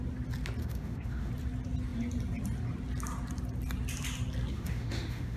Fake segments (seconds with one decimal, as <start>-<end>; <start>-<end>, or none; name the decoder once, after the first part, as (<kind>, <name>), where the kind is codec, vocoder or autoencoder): 0.6-1.3 (autoencoder, DAC-VAE); 4.5-5.4